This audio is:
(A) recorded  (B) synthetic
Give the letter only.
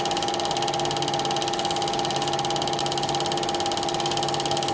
A